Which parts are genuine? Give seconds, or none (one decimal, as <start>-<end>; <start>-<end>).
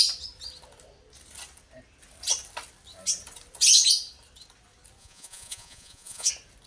0.0-5.0; 6.3-6.7